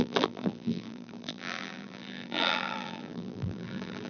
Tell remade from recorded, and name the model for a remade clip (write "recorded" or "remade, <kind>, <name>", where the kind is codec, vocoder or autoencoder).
remade, vocoder, BigVGAN v2